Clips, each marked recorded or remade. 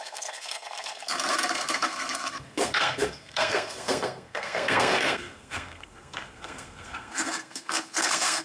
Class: remade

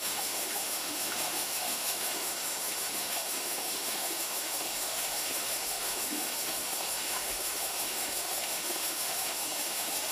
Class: remade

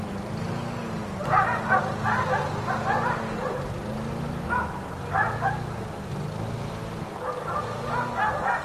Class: recorded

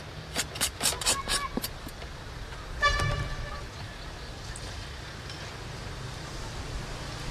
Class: recorded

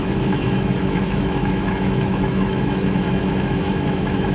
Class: remade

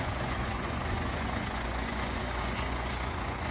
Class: remade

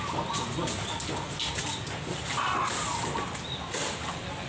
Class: recorded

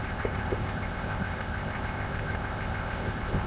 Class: remade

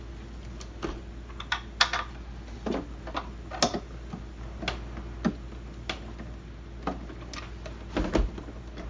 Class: recorded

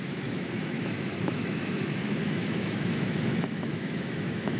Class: remade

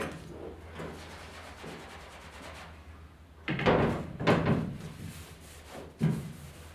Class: recorded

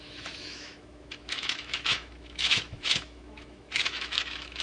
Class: remade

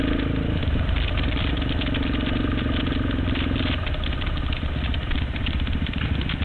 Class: remade